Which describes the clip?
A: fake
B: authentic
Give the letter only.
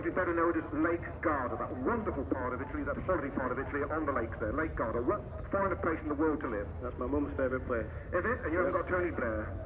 B